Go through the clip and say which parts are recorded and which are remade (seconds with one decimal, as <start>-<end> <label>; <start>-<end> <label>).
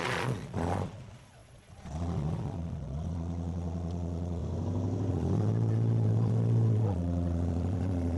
0.0-4.4 remade; 4.4-5.1 recorded; 5.1-8.2 remade